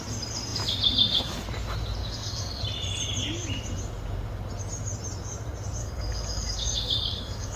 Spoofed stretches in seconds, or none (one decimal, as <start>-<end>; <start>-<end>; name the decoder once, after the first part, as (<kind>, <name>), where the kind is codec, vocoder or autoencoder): 2.0-2.6 (codec, DAC); 5.8-7.6